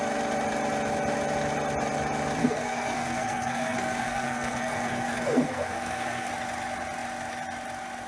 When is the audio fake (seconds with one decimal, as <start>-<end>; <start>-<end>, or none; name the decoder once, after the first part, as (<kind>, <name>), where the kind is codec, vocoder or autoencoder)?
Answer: 2.4-6.3 (codec, SNAC)